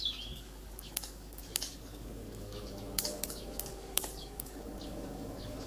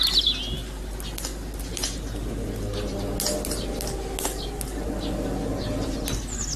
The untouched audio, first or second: second